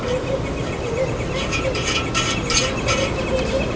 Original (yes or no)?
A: yes